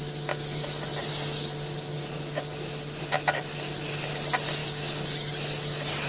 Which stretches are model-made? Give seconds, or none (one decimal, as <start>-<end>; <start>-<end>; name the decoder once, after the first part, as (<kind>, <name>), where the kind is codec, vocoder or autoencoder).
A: none